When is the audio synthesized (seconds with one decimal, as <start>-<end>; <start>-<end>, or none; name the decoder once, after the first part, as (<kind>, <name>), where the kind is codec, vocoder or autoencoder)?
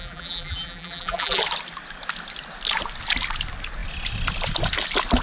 0.0-1.4 (vocoder, BigVGAN v2)